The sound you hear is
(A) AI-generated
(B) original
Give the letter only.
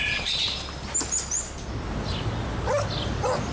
B